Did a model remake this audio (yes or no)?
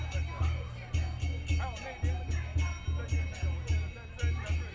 no